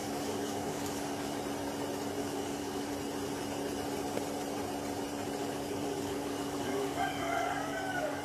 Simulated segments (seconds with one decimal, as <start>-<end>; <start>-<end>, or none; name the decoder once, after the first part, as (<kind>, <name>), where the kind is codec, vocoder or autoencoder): 0.0-1.4 (codec, DAC); 2.2-2.9; 5.4-8.2